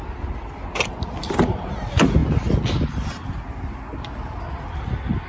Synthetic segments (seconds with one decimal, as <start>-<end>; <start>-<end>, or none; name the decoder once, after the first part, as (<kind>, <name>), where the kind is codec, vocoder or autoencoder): none